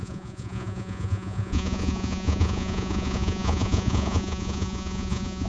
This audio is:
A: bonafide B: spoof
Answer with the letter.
B